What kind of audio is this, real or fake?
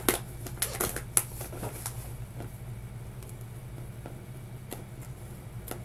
real